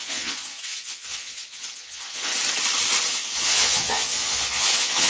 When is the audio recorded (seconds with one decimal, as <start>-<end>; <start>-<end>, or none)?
2.3-3.1